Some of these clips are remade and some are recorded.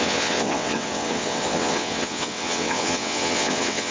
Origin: remade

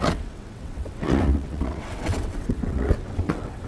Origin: remade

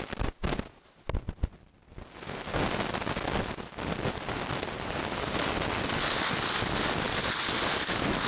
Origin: recorded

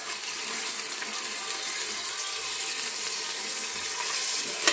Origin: recorded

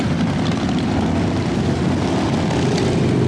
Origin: recorded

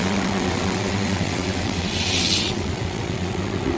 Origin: remade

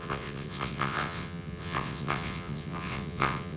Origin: remade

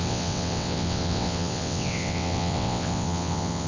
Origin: remade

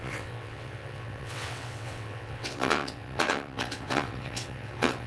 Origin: remade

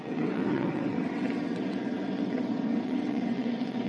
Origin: remade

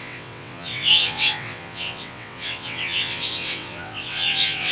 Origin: remade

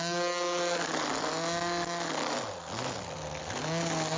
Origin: recorded